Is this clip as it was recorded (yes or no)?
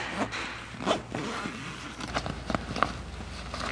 yes